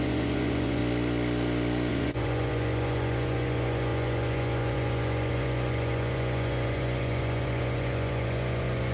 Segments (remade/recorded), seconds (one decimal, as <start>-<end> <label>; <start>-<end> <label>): 0.0-0.8 remade; 0.8-1.9 recorded; 1.9-8.9 remade

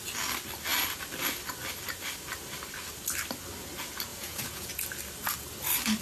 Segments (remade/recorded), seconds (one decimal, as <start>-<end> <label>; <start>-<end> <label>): 0.0-4.1 recorded; 4.1-4.7 remade; 4.7-6.0 recorded

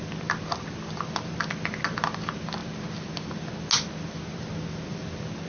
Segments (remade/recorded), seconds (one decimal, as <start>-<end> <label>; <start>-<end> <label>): 0.0-5.5 recorded

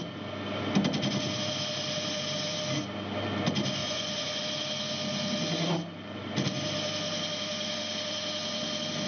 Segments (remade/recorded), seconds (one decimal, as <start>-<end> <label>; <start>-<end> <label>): 0.0-3.8 recorded; 3.8-4.4 remade; 4.4-9.1 recorded

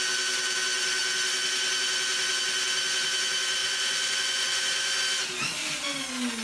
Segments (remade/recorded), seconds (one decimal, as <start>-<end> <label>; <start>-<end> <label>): 0.0-3.6 recorded; 3.6-5.0 remade; 5.0-6.4 recorded

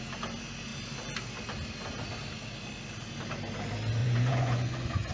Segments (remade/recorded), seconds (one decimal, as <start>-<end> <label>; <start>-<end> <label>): 0.0-4.0 recorded; 4.0-5.1 remade

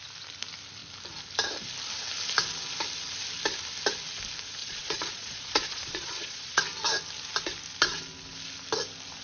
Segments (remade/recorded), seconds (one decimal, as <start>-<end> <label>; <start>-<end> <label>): 0.0-4.6 recorded; 4.6-6.6 remade; 6.6-9.2 recorded

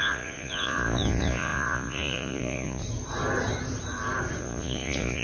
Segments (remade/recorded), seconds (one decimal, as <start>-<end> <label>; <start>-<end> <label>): 0.0-2.8 remade; 2.8-4.4 recorded; 4.4-5.2 remade